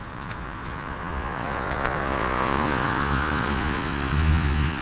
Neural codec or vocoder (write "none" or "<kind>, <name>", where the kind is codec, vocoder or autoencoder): vocoder, Vocos